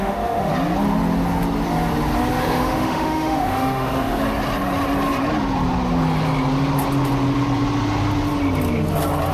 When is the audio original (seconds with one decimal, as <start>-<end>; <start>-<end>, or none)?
0.5-2.4; 4.2-9.3

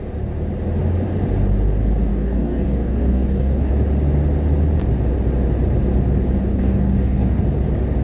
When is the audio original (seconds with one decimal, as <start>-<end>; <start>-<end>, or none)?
0.0-2.1; 3.7-6.5; 7.4-8.0